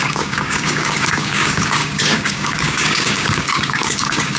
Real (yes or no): no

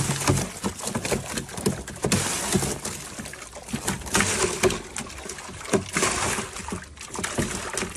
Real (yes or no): yes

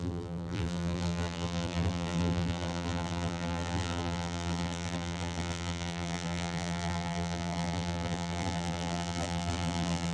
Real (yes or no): no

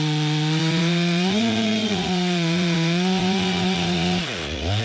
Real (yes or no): no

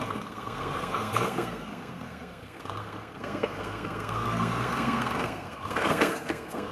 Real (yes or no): no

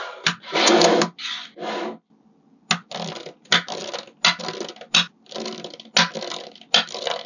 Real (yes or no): yes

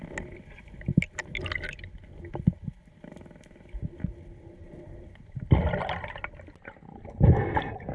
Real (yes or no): yes